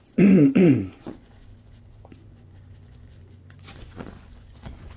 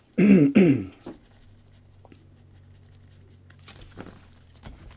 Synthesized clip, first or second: first